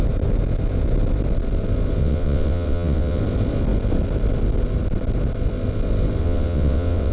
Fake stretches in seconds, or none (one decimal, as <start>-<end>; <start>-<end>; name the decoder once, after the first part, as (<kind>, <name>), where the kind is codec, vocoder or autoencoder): 2.0-3.2 (vocoder, WaveNeXt); 6.2-7.1